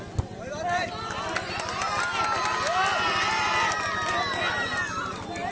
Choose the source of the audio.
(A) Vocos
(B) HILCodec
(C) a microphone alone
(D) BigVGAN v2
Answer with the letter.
C